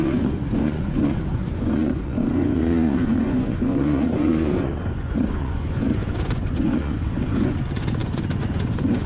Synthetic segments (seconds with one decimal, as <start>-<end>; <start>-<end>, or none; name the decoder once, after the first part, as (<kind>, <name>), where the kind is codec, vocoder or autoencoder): 0.0-9.1 (vocoder, Vocos)